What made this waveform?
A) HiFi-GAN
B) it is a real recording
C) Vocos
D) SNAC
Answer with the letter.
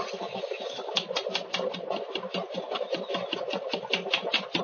B